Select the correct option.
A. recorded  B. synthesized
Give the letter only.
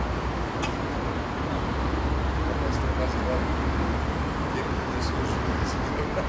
A